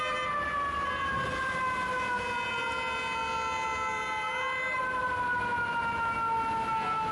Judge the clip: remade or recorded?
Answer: recorded